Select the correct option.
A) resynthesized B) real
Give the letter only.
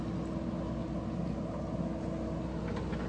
B